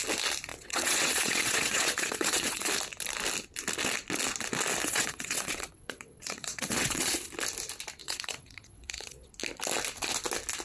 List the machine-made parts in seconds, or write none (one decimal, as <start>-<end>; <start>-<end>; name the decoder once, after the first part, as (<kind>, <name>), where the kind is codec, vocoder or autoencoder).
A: 0.5-2.7 (vocoder, WaveNeXt); 4.8-7.3; 8.0-9.3